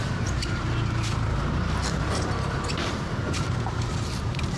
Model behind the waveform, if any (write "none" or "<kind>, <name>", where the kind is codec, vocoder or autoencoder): vocoder, BigVGAN v2